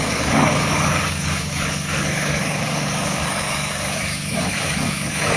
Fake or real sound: fake